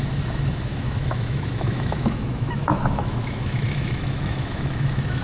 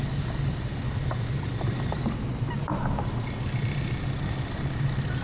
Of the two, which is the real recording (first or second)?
second